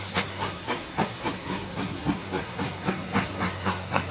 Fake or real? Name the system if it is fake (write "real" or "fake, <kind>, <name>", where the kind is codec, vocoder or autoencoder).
fake, codec, SNAC